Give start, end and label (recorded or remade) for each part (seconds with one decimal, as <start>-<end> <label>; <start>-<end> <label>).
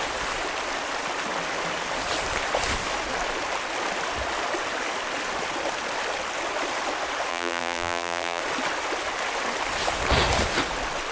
0.0-7.3 recorded; 7.3-8.4 remade; 8.4-11.1 recorded